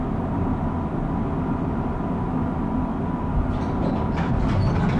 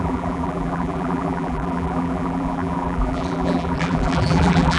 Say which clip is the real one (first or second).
first